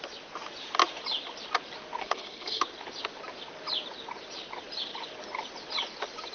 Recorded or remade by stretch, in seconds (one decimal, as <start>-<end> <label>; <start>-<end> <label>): 0.0-2.0 recorded; 2.0-2.6 remade; 2.6-6.3 recorded